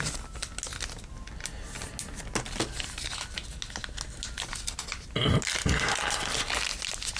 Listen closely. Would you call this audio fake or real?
real